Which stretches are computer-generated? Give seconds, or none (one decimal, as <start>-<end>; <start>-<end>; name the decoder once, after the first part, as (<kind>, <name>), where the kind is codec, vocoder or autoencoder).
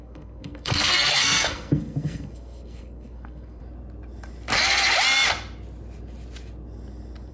0.0-3.6 (codec, SNAC)